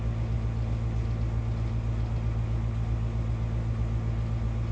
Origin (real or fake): real